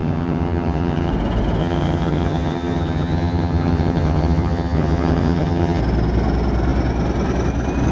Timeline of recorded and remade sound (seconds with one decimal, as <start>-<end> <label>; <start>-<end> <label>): 0.0-1.1 remade; 1.1-1.6 recorded; 1.6-5.8 remade; 5.8-7.9 recorded